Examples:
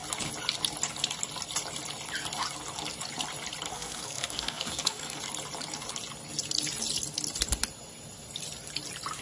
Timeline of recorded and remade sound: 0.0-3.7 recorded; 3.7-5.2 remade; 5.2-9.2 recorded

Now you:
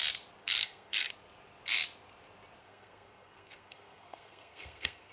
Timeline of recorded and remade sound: 0.0-0.4 recorded; 0.4-1.1 remade; 1.1-2.6 recorded; 2.6-5.1 remade

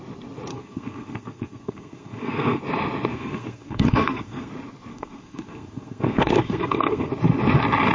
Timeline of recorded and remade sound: 0.0-0.5 recorded; 0.5-2.6 remade; 2.6-3.1 recorded; 3.1-4.5 remade; 4.5-4.9 recorded; 4.9-7.1 remade; 7.1-7.9 recorded

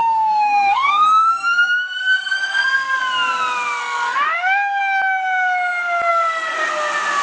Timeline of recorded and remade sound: 0.0-3.0 remade; 3.0-3.8 recorded; 3.8-4.8 remade; 4.8-6.1 recorded; 6.1-6.7 remade; 6.7-7.2 recorded

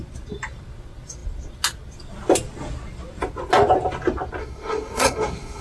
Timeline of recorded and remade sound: 0.0-4.4 recorded; 4.4-5.6 remade